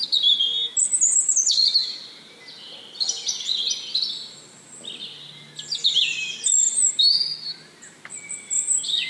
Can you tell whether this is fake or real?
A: real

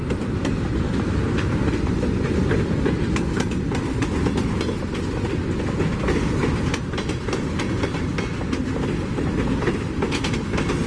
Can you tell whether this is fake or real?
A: real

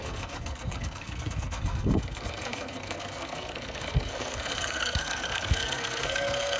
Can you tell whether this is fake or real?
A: fake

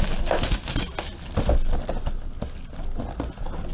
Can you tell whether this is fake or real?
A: real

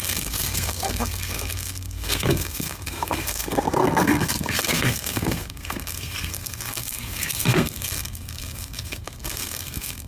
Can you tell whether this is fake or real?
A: fake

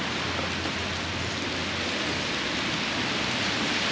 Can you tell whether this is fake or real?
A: real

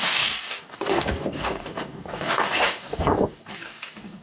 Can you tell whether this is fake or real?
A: fake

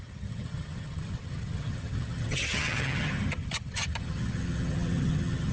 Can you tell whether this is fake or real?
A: fake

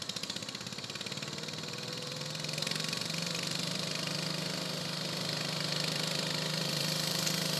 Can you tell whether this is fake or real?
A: fake